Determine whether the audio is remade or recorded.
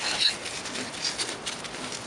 recorded